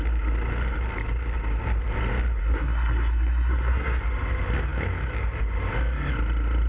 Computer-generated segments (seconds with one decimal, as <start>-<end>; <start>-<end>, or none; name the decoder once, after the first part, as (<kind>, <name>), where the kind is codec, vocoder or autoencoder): 2.4-4.0 (codec, SNAC)